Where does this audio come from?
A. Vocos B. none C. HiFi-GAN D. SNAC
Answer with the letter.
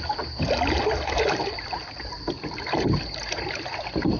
B